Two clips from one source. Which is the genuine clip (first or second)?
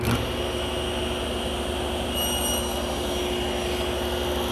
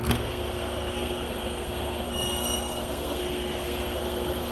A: first